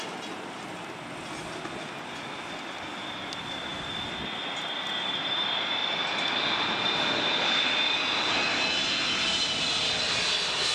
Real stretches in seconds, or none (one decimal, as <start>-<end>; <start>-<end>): 0.0-10.7